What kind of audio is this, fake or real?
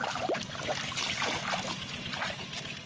real